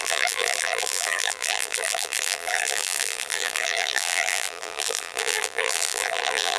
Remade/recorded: remade